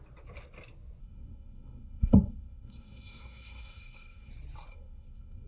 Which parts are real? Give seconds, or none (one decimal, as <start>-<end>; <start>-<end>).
0.0-1.0; 4.3-4.7